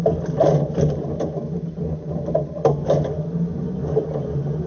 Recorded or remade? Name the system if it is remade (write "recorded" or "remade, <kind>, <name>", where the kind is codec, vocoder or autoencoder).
recorded